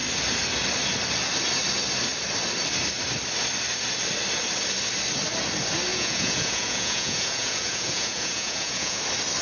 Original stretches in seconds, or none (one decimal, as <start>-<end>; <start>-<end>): 0.0-5.9; 9.0-9.4